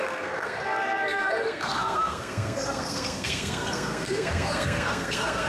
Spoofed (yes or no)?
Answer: yes